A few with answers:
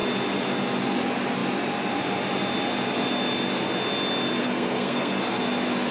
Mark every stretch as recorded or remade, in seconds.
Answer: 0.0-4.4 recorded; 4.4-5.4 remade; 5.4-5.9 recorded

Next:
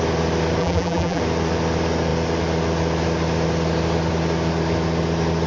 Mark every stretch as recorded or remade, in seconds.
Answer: 0.0-0.6 recorded; 0.6-1.2 remade; 1.2-5.5 recorded